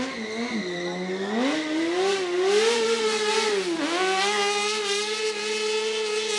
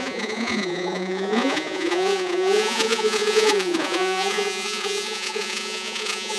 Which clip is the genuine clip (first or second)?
first